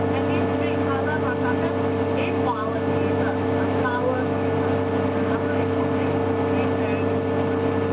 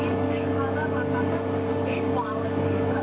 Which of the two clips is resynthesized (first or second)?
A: second